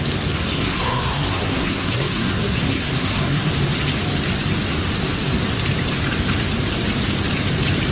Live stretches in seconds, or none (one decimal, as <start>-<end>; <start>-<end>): 0.0-0.4; 3.5-7.9